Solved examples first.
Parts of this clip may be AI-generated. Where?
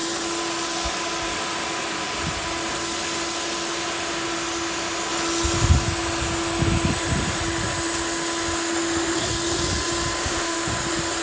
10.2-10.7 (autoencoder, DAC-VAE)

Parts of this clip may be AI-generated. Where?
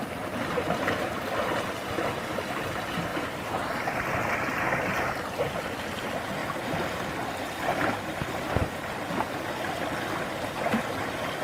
none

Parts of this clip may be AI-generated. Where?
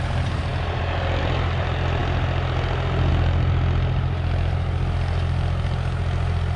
none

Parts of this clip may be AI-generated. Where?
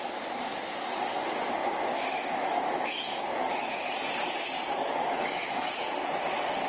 1.6-3.9 (autoencoder, DAC-VAE); 4.8-5.7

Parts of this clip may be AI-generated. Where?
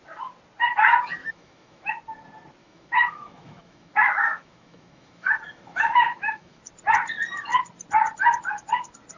1.2-1.9 (autoencoder, DAC-VAE); 2.6-6.6